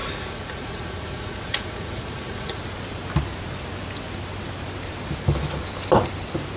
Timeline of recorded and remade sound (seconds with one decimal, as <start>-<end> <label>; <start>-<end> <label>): 0.0-2.6 remade; 2.6-6.6 recorded